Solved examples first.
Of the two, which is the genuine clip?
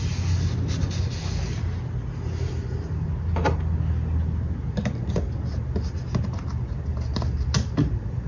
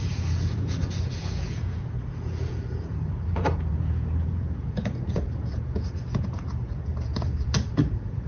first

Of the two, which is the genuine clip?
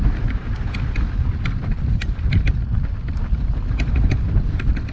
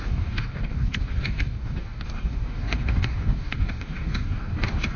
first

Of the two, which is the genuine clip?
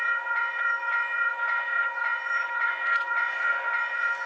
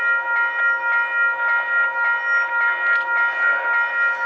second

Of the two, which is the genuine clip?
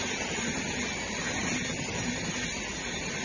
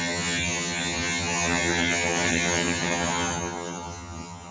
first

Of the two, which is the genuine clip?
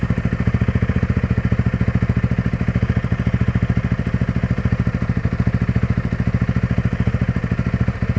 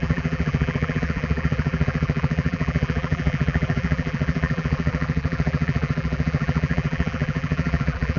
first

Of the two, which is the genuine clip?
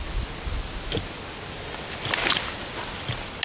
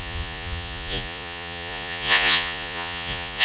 first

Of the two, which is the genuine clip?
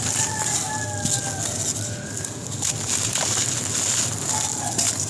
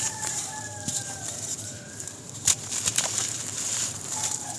first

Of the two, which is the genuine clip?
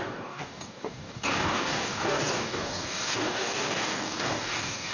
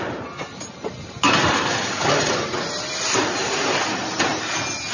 second